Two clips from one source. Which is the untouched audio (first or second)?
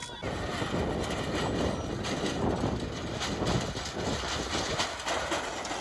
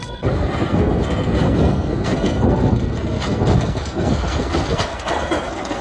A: first